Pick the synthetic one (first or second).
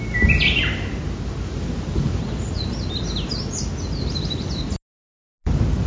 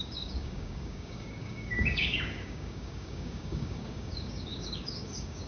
second